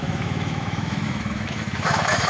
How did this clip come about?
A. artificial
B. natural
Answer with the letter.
A